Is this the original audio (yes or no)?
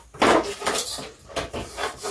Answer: yes